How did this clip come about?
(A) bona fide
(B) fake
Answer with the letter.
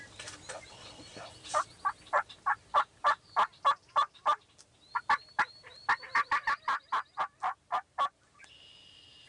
B